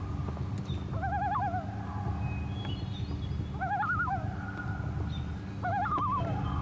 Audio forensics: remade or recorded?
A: recorded